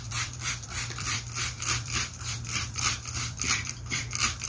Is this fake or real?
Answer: fake